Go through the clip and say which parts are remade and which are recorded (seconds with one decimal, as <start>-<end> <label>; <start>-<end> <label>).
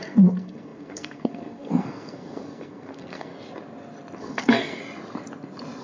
0.0-3.3 remade; 3.3-4.2 recorded; 4.2-4.8 remade; 4.8-5.8 recorded